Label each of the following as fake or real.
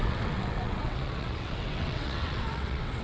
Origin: fake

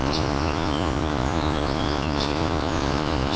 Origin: fake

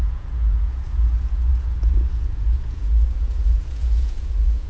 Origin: fake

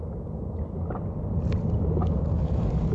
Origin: real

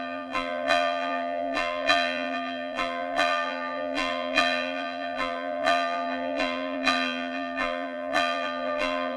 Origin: fake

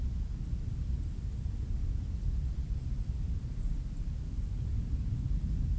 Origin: real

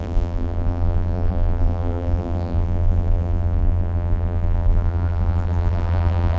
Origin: fake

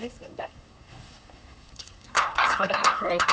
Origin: fake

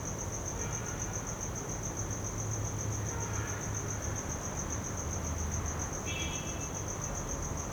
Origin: real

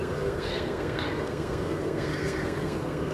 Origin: fake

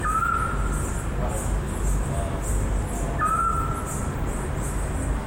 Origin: real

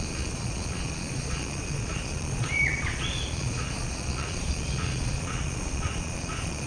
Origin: fake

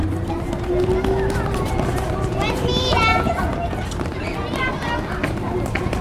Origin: real